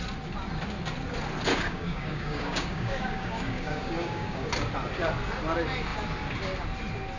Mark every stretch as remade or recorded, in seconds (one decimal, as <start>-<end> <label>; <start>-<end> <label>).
0.0-1.5 recorded; 1.5-4.5 remade; 4.5-7.2 recorded